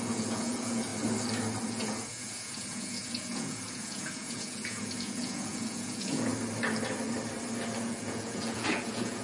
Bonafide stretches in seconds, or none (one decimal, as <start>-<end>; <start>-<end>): 0.9-1.7; 6.3-7.8